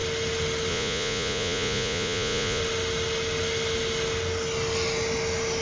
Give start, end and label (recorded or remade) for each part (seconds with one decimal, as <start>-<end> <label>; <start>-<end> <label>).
0.0-0.7 recorded; 0.7-2.6 remade; 2.6-5.6 recorded